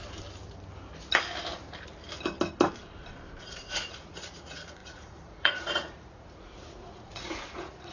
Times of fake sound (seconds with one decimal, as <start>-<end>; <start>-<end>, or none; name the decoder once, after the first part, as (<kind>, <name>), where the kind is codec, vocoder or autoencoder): 3.4-7.9 (vocoder, Vocos)